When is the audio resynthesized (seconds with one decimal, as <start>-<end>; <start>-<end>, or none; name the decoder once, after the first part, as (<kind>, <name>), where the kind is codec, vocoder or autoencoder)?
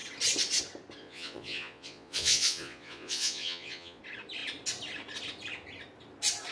1.0-4.0 (vocoder, Vocos)